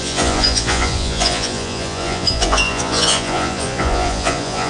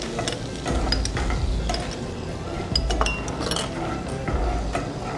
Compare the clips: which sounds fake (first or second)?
first